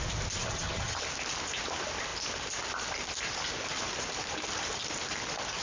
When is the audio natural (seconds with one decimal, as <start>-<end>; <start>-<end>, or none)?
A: 0.0-0.4; 1.0-5.6